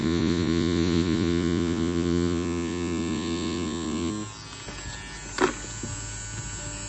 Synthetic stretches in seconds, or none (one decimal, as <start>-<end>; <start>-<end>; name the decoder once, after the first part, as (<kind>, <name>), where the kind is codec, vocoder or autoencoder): 0.0-4.1 (vocoder, Vocos)